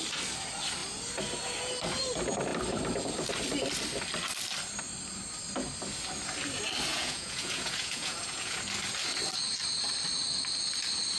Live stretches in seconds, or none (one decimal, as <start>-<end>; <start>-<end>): 0.0-6.9; 8.6-11.2

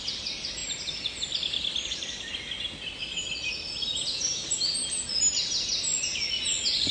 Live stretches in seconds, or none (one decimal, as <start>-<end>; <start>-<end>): 0.0-6.9